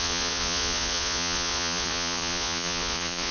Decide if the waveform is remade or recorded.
remade